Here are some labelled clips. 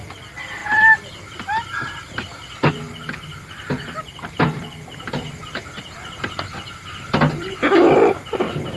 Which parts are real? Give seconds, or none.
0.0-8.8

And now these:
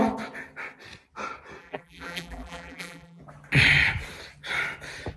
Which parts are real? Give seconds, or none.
0.0-1.6; 3.2-5.2

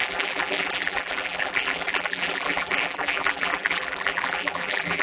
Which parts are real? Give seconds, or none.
none

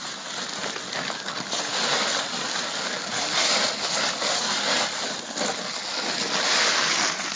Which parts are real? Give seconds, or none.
0.0-1.9; 5.5-7.4

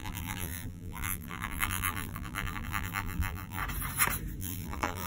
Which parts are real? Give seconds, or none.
3.6-4.4

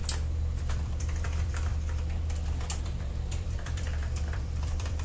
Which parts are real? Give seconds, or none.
0.0-0.7; 1.7-2.8

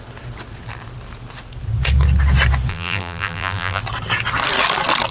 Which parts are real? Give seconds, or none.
0.0-2.7; 3.8-5.1

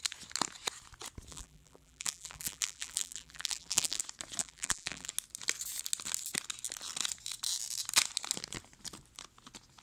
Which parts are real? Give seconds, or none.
0.0-1.3; 4.0-4.4; 5.1-9.8